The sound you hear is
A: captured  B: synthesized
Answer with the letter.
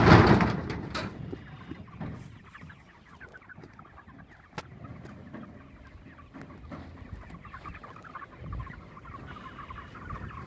A